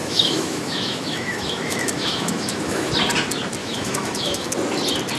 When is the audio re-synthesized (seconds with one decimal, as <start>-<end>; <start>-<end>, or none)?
0.0-2.9; 3.6-4.5